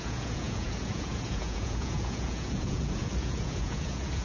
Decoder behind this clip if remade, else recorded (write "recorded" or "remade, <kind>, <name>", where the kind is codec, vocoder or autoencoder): remade, vocoder, Vocos